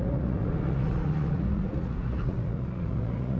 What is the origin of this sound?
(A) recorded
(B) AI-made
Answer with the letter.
B